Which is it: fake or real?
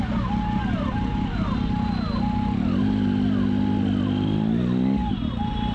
real